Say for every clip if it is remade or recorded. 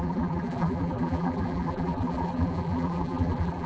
remade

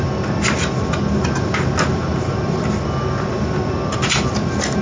recorded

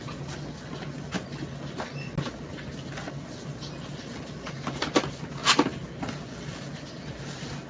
recorded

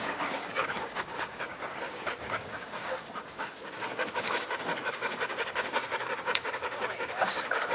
remade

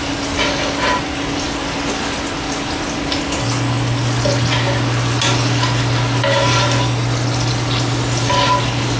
recorded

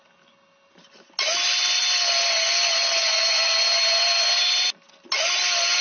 recorded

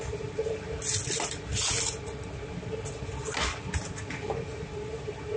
recorded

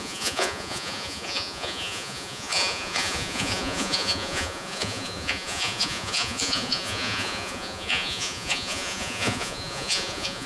remade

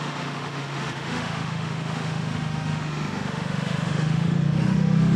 remade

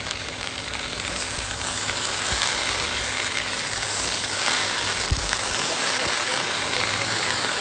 remade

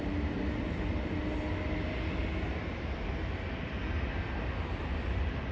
recorded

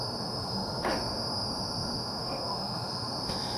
remade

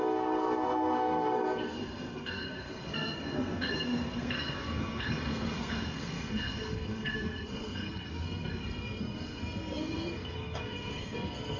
remade